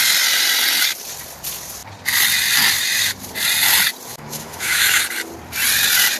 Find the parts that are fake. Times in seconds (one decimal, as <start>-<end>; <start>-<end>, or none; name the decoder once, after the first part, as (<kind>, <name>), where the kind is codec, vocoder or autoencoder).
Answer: 4.1-5.0 (autoencoder, DAC-VAE)